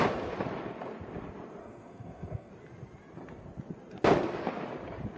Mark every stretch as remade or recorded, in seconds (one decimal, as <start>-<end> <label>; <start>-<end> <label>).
0.0-1.6 recorded; 1.6-2.5 remade; 2.5-5.2 recorded